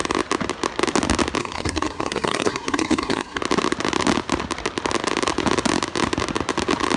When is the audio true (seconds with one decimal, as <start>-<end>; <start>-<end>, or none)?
0.0-1.4; 3.4-7.0